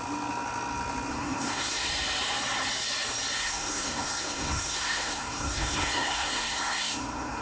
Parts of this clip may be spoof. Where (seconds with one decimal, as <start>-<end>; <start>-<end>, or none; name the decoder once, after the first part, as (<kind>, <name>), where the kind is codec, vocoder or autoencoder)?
1.1-1.9 (codec, SNAC); 3.4-7.4